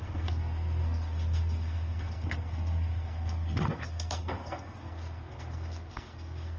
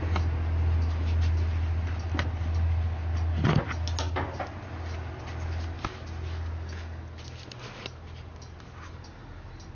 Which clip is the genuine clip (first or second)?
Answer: second